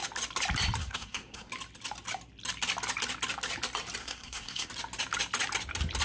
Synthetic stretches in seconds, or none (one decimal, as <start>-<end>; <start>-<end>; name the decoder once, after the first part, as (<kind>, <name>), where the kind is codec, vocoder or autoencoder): 0.8-1.5 (codec, SNAC); 4.0-4.7